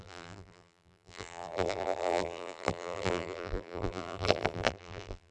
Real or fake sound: fake